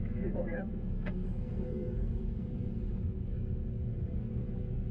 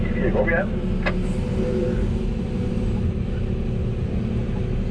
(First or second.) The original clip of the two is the second